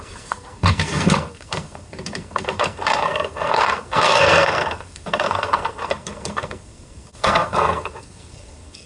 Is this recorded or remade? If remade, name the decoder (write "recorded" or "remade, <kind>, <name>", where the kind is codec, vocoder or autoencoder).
remade, codec, SNAC